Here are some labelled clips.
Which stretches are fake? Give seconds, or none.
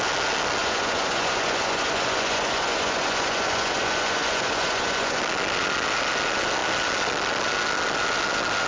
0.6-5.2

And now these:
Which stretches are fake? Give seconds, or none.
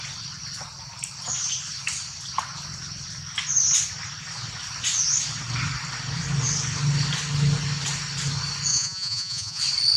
8.7-9.6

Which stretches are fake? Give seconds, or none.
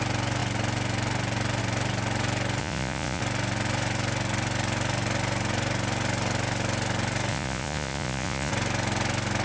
2.6-3.2; 7.3-8.5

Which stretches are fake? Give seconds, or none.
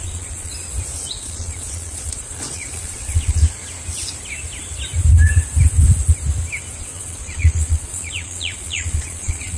0.0-0.5; 1.1-3.4; 6.8-9.6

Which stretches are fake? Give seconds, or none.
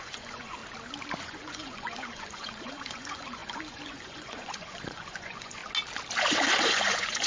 0.0-0.6; 1.2-5.6; 6.2-7.3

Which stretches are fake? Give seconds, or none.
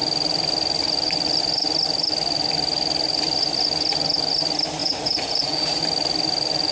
4.8-5.8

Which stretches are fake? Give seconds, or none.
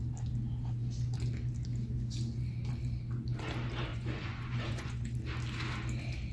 3.9-5.1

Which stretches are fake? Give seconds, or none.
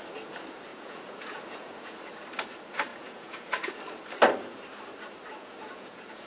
0.7-2.0; 2.9-3.8; 5.3-6.3